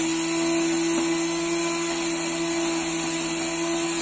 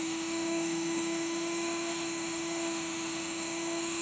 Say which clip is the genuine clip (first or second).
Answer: first